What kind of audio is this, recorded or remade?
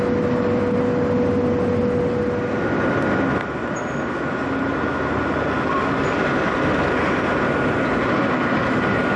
recorded